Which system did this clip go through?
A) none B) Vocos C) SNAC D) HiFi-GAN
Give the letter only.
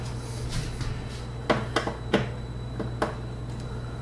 A